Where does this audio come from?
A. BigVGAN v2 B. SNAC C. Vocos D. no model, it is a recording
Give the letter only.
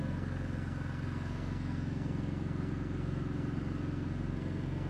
B